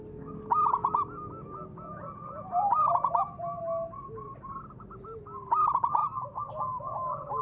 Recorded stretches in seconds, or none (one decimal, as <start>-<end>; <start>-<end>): 0.0-0.8; 3.6-6.0; 6.5-7.4